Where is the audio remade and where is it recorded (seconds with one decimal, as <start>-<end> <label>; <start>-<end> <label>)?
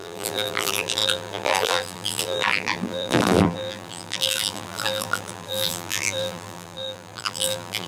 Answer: 0.0-7.9 remade